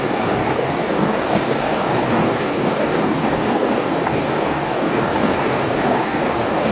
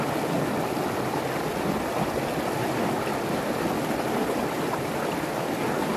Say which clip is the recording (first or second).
second